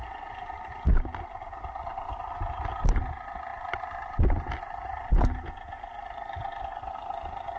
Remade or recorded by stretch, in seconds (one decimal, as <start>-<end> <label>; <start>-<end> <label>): 0.0-7.6 recorded